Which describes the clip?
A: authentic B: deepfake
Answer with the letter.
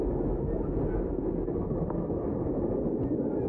A